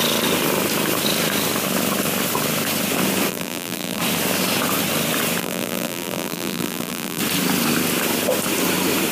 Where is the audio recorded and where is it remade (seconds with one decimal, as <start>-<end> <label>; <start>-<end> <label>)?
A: 0.0-3.3 recorded; 3.3-4.0 remade; 4.0-5.4 recorded; 5.4-7.2 remade; 7.2-9.1 recorded

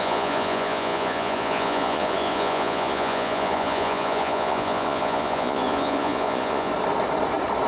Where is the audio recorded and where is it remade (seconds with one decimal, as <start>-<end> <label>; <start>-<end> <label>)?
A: 0.0-6.7 remade; 6.7-7.7 recorded

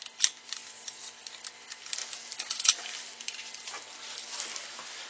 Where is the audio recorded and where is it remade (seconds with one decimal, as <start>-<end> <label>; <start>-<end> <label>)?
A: 0.0-5.1 recorded

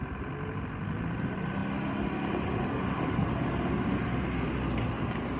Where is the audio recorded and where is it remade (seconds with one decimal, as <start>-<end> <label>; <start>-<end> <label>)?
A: 0.0-5.4 recorded